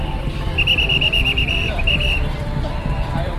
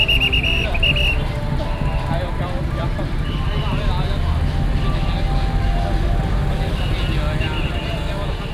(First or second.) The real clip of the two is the second